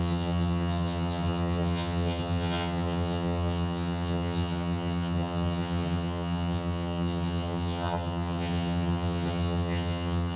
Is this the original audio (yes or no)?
no